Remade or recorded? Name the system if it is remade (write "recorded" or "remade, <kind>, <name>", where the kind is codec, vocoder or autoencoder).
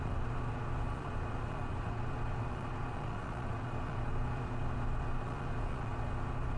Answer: remade, vocoder, Vocos